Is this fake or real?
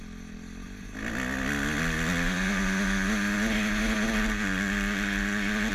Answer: real